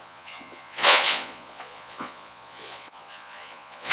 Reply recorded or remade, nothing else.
remade